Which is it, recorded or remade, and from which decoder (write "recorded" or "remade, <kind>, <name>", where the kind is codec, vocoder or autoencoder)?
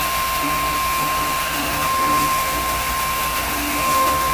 remade, autoencoder, DAC-VAE